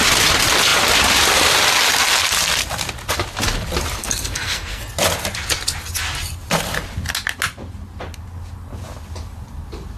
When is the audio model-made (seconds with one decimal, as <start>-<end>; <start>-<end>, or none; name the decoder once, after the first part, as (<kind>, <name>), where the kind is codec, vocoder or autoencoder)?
4.0-4.8 (codec, SNAC)